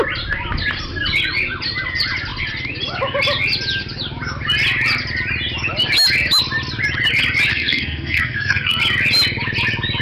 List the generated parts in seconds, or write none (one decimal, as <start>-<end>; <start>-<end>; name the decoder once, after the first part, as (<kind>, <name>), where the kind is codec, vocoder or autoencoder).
7.5-8.8 (codec, SNAC)